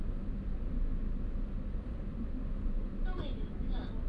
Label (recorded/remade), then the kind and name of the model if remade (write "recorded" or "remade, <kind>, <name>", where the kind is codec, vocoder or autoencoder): recorded